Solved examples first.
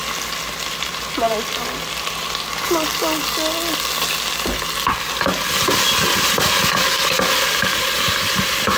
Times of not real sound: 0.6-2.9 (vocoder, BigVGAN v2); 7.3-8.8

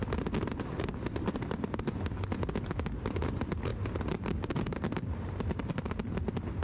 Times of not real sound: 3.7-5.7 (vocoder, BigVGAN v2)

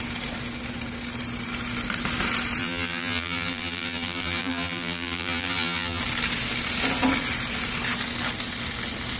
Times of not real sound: 2.6-6.0 (vocoder, BigVGAN v2)

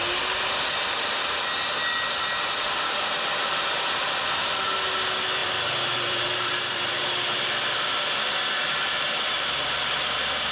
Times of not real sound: 5.4-7.0 (vocoder, BigVGAN v2)

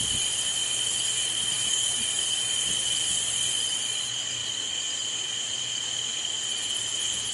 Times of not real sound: 0.6-1.7 (vocoder, BigVGAN v2); 4.4-6.1

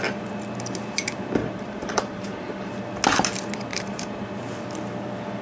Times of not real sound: 1.4-2.7 (vocoder, BigVGAN v2); 3.7-4.3